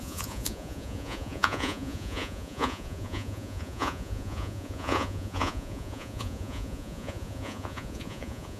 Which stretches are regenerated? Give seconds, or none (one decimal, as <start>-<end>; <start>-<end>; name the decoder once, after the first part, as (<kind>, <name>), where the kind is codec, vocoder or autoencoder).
0.0-8.6 (vocoder, Vocos)